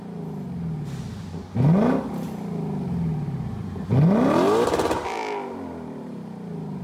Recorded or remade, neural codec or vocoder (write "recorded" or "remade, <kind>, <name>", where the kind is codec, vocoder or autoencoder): recorded